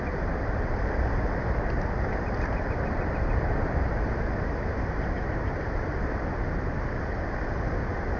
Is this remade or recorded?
recorded